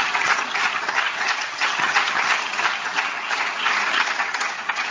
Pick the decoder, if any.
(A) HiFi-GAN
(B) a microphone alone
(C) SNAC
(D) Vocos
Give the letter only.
A